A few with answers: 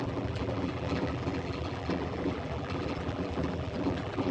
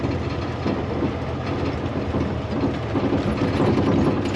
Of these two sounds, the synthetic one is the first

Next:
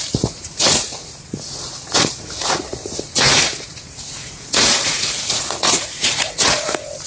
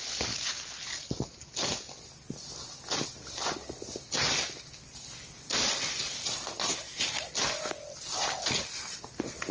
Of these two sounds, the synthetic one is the first